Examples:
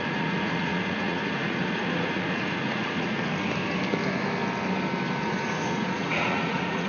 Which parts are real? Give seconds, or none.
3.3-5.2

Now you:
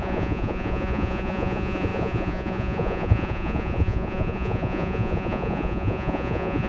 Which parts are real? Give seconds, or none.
none

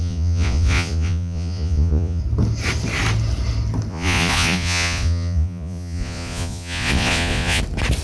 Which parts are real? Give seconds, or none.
2.2-3.9; 7.6-8.0

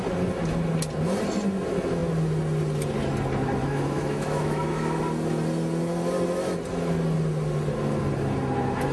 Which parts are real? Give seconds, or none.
0.0-3.6; 5.0-8.9

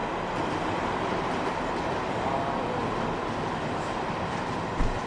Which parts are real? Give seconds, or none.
0.0-5.1